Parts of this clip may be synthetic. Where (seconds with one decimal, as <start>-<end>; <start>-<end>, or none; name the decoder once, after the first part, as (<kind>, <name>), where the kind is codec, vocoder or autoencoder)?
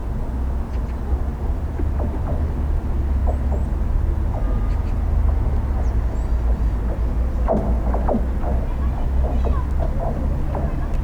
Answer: 1.3-2.3 (vocoder, BigVGAN v2)